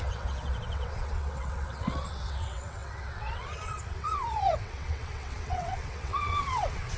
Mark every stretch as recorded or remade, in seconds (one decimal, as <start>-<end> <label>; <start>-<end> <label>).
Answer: 0.0-7.0 remade